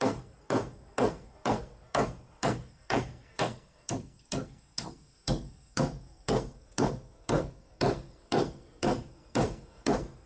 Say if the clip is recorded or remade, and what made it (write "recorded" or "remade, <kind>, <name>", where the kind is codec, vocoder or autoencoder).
remade, codec, SNAC